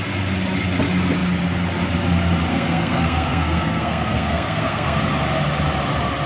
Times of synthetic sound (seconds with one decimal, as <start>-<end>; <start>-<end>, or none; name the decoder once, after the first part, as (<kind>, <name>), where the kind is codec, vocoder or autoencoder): 2.5-5.0 (codec, SNAC)